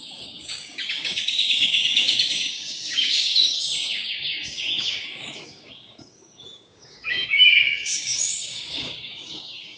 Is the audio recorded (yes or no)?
no